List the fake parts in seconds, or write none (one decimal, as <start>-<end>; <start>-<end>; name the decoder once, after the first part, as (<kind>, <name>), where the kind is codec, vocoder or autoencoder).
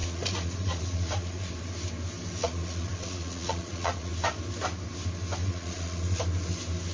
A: 0.0-1.5 (vocoder, Vocos); 2.4-4.1; 5.4-6.2